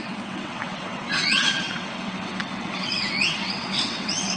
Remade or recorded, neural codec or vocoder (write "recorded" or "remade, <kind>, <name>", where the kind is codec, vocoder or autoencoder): remade, vocoder, WaveNeXt